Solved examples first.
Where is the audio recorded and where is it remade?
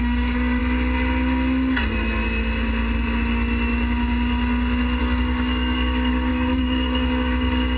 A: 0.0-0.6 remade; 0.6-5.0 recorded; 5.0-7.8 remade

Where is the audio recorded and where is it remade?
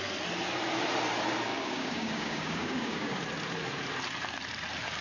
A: 0.0-1.5 recorded; 1.5-3.2 remade; 3.2-5.0 recorded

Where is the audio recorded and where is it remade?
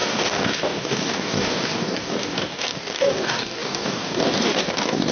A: 0.0-5.1 remade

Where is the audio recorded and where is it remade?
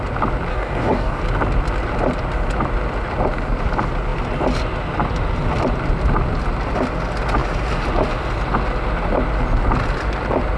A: 0.0-0.5 recorded; 0.5-1.2 remade; 1.2-10.6 recorded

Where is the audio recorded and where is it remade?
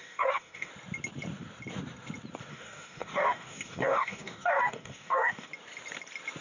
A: 0.0-0.7 remade; 0.7-2.5 recorded; 2.5-5.5 remade; 5.5-6.4 recorded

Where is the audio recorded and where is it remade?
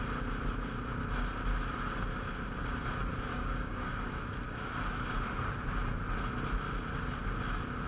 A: 0.0-3.3 recorded; 3.3-4.7 remade; 4.7-7.9 recorded